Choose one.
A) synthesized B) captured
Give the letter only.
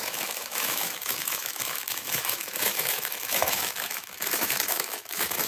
A